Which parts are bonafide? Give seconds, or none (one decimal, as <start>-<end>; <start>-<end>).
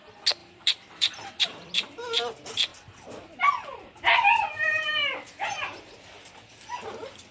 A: 0.0-0.4; 1.7-7.3